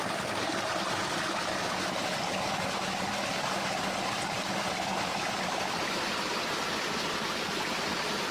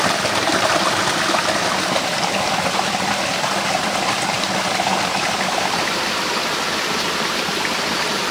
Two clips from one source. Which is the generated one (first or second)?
second